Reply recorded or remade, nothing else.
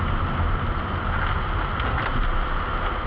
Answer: recorded